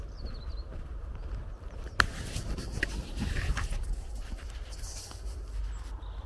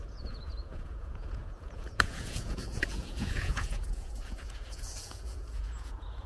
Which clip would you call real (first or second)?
first